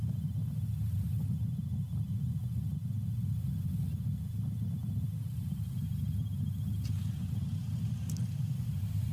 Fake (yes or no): yes